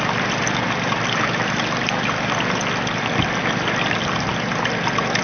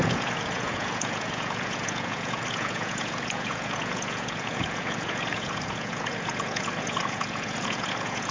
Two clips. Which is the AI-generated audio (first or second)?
second